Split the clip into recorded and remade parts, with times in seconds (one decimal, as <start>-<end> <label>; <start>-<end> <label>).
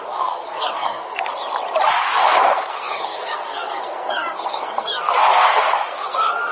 0.0-1.4 remade; 1.4-1.9 recorded; 1.9-6.5 remade